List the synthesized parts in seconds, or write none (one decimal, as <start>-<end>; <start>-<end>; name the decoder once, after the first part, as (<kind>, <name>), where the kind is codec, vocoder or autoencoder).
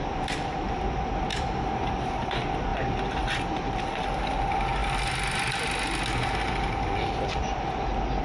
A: none